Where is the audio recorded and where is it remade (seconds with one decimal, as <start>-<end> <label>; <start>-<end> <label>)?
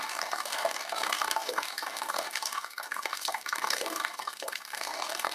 0.0-5.3 remade